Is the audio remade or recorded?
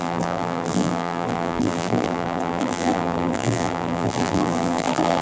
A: remade